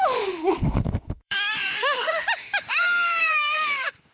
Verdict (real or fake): fake